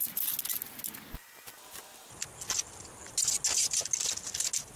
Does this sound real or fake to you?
real